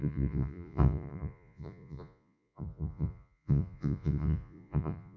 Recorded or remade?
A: remade